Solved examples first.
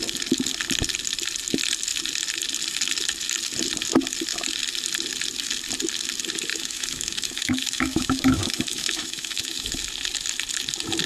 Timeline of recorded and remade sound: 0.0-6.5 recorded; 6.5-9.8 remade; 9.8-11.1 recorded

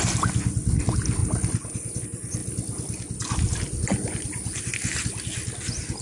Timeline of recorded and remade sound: 0.0-6.0 recorded

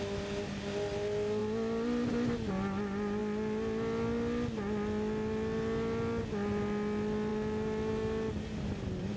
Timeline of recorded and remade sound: 0.0-9.2 recorded

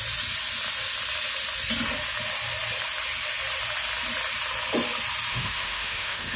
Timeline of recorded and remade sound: 0.0-5.3 recorded; 5.3-6.4 remade

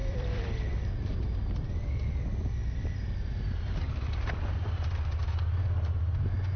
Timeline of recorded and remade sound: 0.0-0.7 remade; 0.7-2.6 recorded; 2.6-3.3 remade; 3.3-6.6 recorded